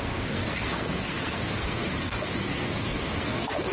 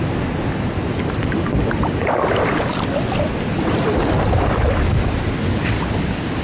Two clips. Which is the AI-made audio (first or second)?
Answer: first